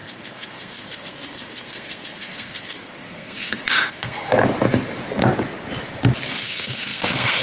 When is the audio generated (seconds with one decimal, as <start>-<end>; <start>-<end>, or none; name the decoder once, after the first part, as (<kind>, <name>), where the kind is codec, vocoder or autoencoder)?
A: 0.0-4.3 (codec, SNAC); 6.4-7.4